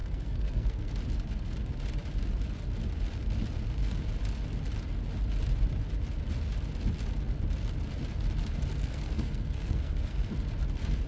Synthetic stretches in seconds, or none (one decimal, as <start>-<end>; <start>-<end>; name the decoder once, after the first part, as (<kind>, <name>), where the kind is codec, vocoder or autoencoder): 0.0-0.9 (codec, SNAC); 8.8-10.3